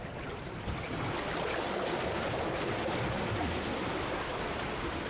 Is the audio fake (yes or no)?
no